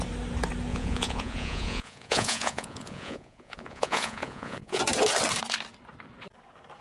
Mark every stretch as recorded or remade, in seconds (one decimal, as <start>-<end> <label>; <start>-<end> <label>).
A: 0.0-0.7 recorded; 0.7-4.8 remade; 4.8-6.8 recorded